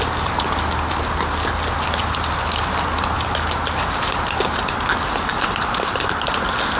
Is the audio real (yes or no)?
yes